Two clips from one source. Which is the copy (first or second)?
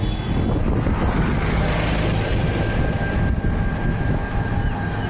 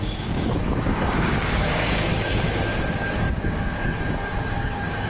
second